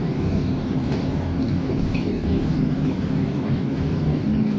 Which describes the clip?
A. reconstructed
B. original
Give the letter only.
A